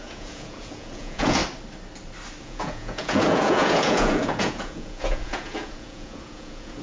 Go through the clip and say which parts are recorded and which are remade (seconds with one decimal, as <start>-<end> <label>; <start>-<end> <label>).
0.0-1.4 remade; 1.4-2.4 recorded; 2.4-6.8 remade

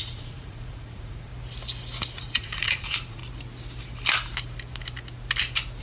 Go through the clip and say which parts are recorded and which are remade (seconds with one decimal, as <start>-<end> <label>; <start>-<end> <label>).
0.0-1.3 remade; 1.3-2.1 recorded; 2.1-3.2 remade; 3.2-5.8 recorded

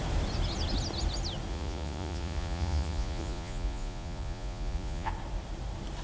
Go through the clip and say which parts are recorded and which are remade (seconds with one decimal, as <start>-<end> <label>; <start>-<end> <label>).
0.0-1.5 recorded; 1.5-5.1 remade; 5.1-6.0 recorded